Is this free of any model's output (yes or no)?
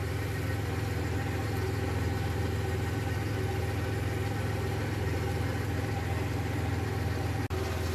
yes